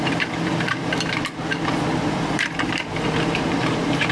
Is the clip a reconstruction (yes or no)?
yes